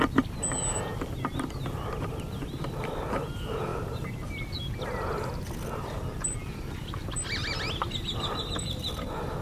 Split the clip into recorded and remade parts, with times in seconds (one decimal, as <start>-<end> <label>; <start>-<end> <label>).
0.0-9.4 recorded